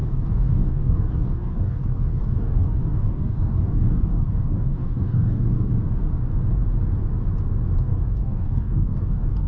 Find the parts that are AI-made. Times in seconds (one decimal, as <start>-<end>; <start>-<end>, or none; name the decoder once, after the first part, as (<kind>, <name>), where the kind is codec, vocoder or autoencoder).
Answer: 0.0-5.7 (codec, DAC); 7.8-9.5